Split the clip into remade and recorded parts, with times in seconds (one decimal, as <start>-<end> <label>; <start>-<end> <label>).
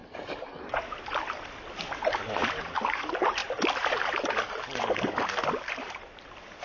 0.0-3.0 remade; 3.0-3.4 recorded; 3.4-3.9 remade; 3.9-6.6 recorded